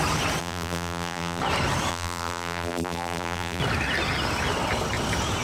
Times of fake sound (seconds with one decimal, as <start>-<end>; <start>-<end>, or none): 0.4-1.4; 1.9-3.6